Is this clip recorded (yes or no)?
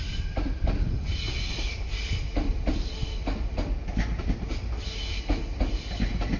yes